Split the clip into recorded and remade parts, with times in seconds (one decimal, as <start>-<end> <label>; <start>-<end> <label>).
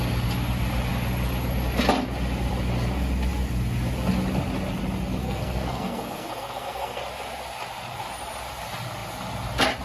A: 0.0-5.2 recorded; 5.2-7.0 remade; 7.0-9.8 recorded